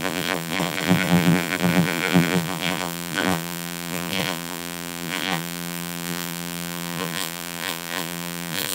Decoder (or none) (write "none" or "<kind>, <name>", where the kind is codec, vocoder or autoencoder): vocoder, BigVGAN v2